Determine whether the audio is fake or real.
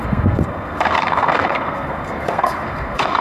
fake